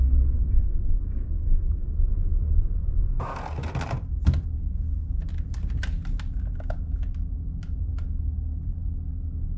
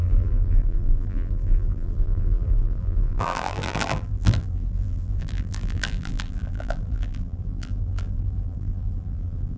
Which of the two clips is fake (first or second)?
second